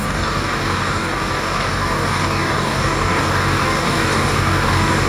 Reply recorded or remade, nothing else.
remade